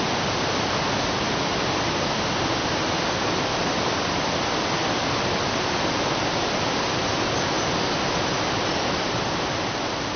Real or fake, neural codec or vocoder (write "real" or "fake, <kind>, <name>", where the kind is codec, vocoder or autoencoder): real